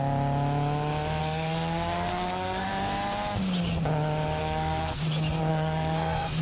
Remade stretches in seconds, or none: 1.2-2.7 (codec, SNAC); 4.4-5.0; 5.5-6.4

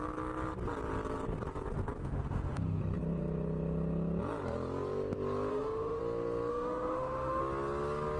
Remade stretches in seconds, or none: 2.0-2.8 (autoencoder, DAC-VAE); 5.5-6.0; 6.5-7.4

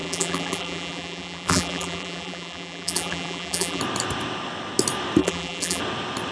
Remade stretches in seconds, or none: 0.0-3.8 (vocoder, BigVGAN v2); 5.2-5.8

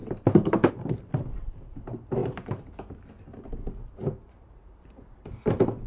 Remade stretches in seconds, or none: 0.0-0.7 (vocoder, BigVGAN v2); 2.2-3.2; 4.0-5.9